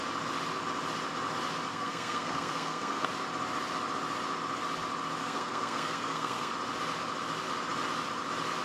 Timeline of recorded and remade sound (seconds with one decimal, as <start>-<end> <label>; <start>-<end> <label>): 0.0-1.7 recorded; 1.7-3.1 remade; 3.1-5.2 recorded; 5.2-6.5 remade; 6.5-8.6 recorded